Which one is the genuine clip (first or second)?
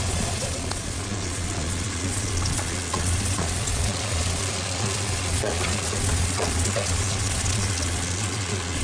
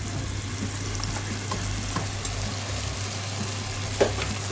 second